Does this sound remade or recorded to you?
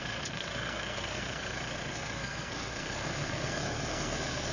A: remade